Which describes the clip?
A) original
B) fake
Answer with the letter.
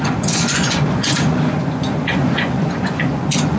B